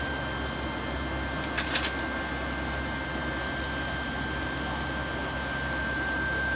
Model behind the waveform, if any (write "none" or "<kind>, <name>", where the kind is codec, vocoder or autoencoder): none